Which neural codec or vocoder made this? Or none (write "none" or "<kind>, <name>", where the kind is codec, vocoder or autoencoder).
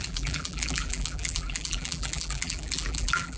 vocoder, BigVGAN v2